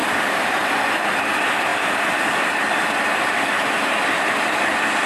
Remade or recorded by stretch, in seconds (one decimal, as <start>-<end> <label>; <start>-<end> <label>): 0.0-5.1 recorded